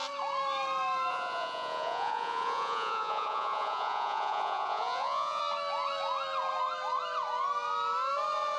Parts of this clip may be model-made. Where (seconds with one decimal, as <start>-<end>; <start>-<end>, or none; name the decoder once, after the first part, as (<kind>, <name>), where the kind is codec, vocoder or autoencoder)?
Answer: 1.1-5.4 (vocoder, Vocos)